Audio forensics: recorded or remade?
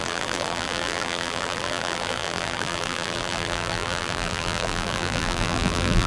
remade